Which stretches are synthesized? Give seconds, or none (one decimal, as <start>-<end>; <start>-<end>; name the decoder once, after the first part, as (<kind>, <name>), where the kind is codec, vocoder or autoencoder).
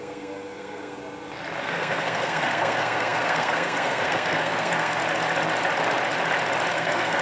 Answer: 0.0-1.0 (codec, SNAC); 1.6-5.0; 6.7-7.2